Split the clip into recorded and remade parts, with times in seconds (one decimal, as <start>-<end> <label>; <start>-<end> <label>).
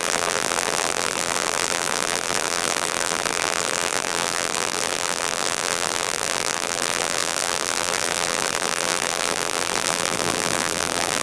0.0-11.2 remade